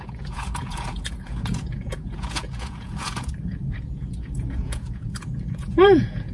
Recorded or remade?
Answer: remade